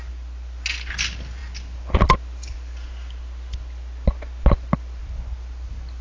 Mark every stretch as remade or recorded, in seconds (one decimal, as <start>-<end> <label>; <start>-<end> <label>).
0.0-6.0 recorded